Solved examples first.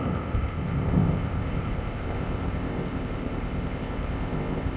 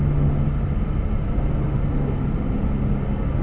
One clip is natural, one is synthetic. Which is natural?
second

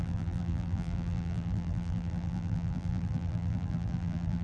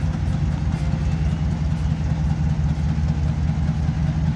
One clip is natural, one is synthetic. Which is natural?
second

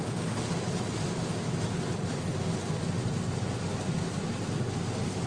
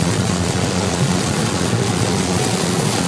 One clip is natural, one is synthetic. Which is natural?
first